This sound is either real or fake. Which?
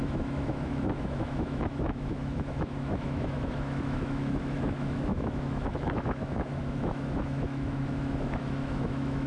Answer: fake